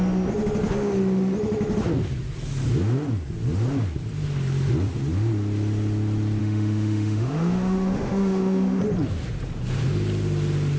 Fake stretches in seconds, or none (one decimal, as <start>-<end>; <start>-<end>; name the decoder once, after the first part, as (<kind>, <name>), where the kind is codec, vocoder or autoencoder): 6.4-8.8 (autoencoder, DAC-VAE)